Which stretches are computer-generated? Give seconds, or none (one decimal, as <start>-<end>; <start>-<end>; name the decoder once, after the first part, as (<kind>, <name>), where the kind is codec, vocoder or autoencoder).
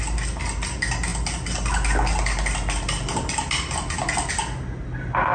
none